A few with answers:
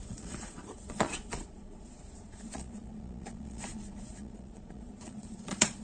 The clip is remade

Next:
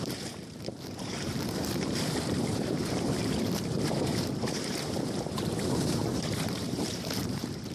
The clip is remade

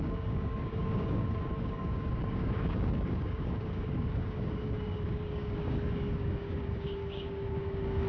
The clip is remade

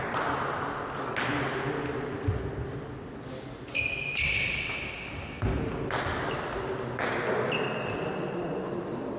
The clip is recorded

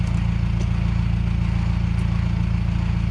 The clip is recorded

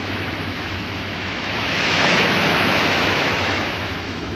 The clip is remade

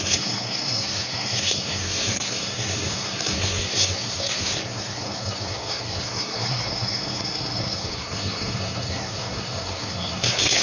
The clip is remade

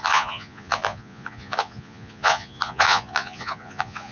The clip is remade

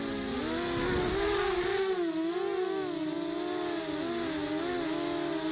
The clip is recorded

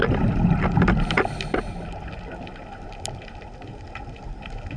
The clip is recorded